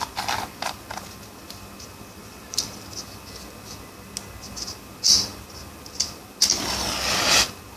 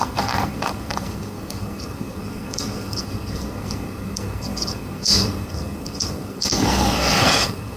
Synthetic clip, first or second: second